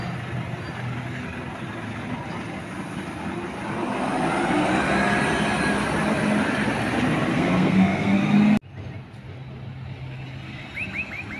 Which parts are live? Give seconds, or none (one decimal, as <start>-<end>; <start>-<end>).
0.0-7.3; 8.2-11.4